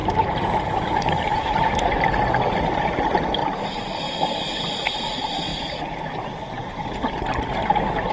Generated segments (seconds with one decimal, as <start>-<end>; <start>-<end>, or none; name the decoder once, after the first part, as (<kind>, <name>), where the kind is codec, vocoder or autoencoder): 0.0-2.1 (vocoder, BigVGAN v2); 3.4-4.0